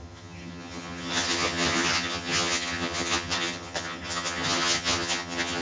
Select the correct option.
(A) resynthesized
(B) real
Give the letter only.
A